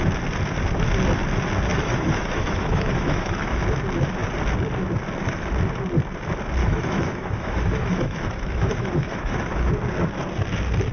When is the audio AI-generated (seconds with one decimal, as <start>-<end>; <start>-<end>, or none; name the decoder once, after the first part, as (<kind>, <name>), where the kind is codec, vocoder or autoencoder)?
1.7-3.6 (autoencoder, DAC-VAE); 6.6-9.7